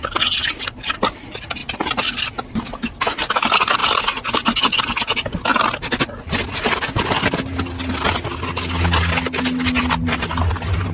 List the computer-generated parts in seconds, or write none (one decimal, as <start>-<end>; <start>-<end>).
none